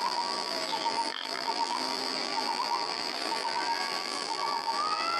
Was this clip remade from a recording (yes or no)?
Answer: yes